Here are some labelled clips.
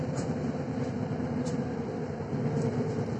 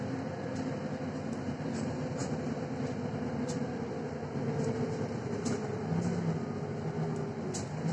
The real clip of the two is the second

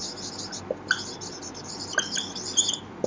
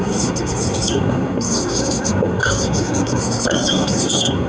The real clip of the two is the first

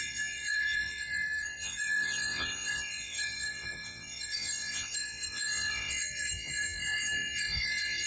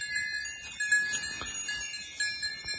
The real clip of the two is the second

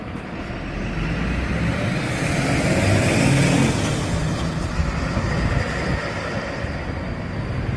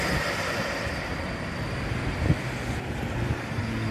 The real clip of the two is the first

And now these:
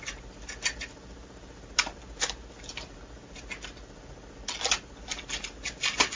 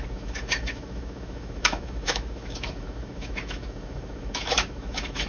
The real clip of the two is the first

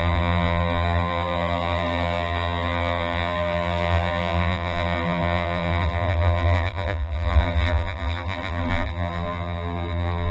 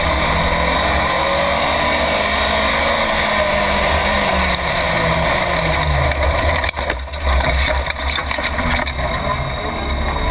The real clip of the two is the second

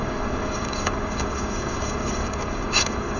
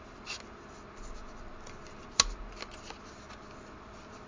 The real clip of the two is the second